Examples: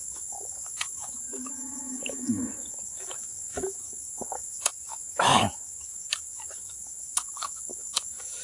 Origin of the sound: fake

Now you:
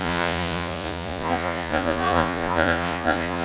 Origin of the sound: fake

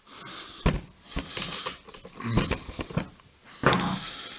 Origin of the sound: real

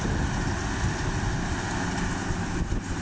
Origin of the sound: real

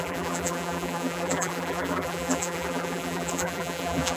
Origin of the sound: fake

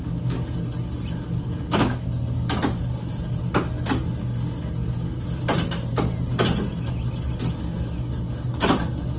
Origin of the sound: real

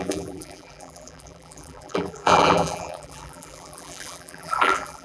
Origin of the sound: fake